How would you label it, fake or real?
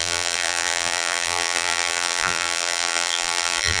fake